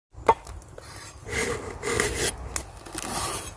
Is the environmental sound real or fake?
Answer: real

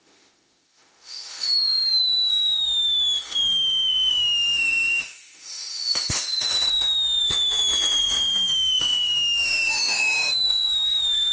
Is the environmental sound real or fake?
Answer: fake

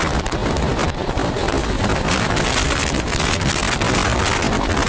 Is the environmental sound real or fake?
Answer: real